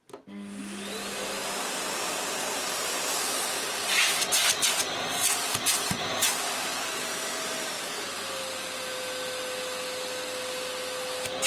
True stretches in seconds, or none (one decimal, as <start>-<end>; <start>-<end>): 0.0-11.5